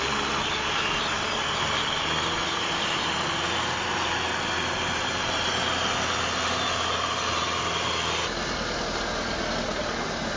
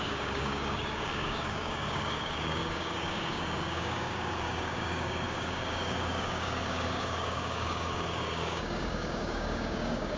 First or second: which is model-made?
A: second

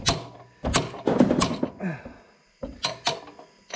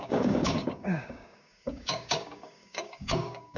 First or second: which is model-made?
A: second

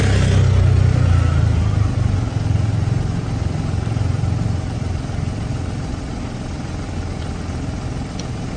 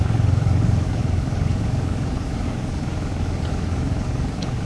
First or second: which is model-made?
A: second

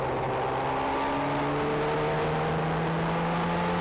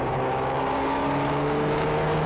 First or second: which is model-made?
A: second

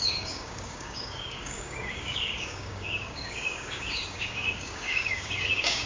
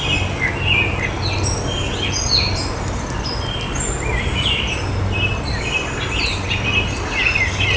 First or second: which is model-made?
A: first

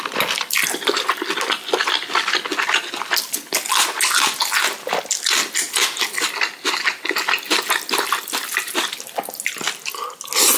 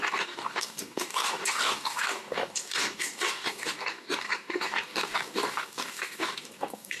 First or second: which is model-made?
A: second